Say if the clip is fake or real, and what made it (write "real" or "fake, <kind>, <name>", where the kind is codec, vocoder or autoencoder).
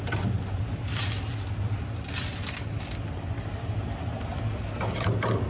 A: fake, vocoder, BigVGAN v2